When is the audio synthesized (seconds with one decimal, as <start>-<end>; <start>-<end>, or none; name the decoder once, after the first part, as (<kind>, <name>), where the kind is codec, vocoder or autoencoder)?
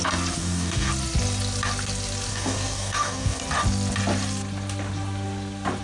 0.4-0.9 (codec, DAC); 2.3-3.4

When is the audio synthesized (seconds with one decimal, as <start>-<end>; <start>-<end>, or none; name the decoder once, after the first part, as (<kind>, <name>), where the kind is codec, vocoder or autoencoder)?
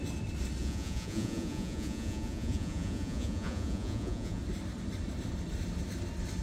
0.6-4.4 (vocoder, Vocos)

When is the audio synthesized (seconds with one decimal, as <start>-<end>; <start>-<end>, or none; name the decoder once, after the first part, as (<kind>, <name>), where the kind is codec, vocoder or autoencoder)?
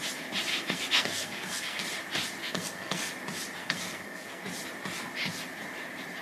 0.5-1.8 (codec, SNAC); 2.4-3.1; 3.6-4.4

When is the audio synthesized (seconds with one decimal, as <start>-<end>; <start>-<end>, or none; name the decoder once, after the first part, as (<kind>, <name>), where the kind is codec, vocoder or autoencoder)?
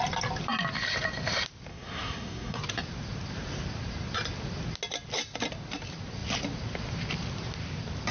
1.7-2.6 (codec, SNAC)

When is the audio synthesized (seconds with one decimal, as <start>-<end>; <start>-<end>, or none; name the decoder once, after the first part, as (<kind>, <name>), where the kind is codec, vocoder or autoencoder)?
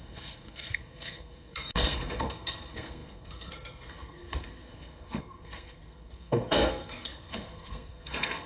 0.0-8.5 (codec, SNAC)